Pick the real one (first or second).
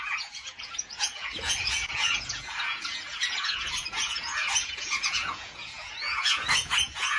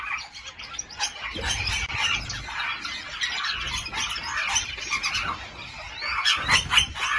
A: second